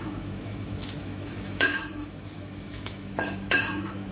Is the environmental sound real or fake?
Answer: fake